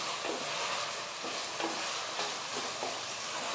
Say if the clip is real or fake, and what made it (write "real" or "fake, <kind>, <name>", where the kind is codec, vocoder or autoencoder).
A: real